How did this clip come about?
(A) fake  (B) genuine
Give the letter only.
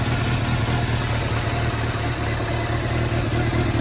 B